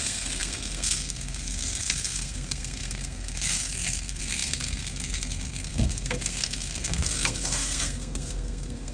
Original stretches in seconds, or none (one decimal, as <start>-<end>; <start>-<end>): none